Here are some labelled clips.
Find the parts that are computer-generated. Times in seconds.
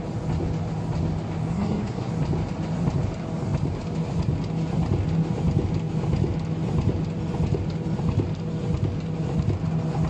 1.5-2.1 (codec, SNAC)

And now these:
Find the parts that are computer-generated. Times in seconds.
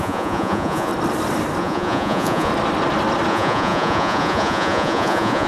0.0-0.9 (vocoder, Vocos); 1.6-2.5; 3.3-5.5